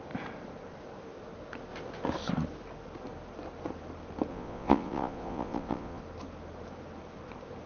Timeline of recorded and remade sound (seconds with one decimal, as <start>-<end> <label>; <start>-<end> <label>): 0.0-4.3 recorded; 4.3-6.0 remade; 6.0-7.7 recorded